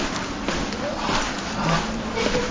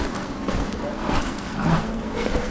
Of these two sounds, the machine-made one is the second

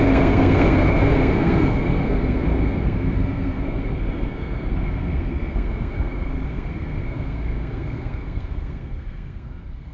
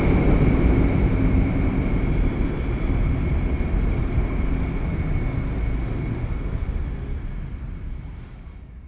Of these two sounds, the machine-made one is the first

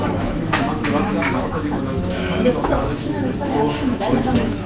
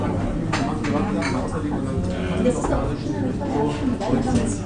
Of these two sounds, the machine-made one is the first